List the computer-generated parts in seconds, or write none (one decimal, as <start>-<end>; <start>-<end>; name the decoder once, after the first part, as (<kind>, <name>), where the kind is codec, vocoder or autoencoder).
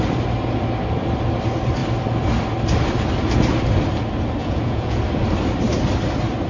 4.4-5.0 (vocoder, Vocos)